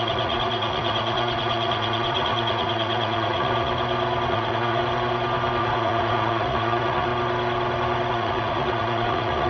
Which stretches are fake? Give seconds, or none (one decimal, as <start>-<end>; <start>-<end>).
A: 0.0-3.7; 4.3-4.8; 5.6-7.1; 8.1-9.5